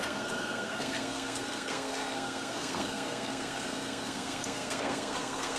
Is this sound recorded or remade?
remade